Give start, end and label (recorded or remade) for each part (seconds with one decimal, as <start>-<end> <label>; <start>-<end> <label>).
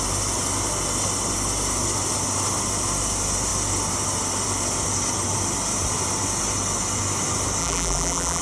0.0-7.6 recorded; 7.6-8.4 remade